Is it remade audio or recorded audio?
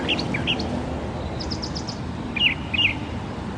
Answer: recorded